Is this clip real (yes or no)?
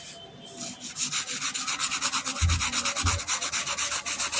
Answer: yes